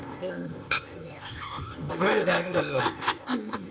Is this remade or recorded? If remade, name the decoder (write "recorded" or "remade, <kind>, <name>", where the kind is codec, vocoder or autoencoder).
remade, codec, ZipCodec